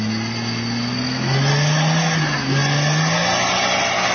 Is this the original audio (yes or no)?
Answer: yes